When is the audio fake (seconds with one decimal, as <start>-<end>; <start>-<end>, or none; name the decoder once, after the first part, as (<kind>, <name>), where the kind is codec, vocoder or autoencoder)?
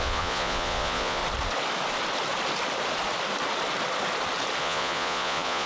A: 0.0-1.2 (vocoder, Vocos); 4.6-5.7